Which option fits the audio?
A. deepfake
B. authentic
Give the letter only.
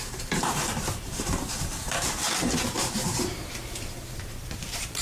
A